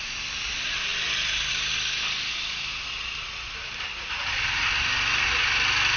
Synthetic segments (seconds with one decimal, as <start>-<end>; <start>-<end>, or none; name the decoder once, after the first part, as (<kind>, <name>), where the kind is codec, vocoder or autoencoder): none

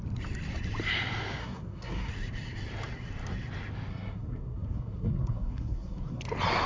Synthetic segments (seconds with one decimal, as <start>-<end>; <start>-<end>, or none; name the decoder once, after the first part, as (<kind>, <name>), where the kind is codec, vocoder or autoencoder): 1.4-2.1 (codec, SNAC); 3.9-6.2